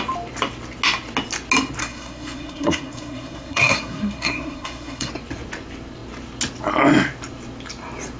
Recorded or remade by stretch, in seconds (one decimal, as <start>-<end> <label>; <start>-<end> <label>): 0.0-1.8 recorded; 1.8-5.1 remade; 5.1-8.2 recorded